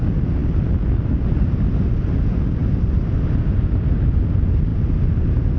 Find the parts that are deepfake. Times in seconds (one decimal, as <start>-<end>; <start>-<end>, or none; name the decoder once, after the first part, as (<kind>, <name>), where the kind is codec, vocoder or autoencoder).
none